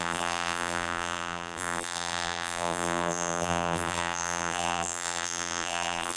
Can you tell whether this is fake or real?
fake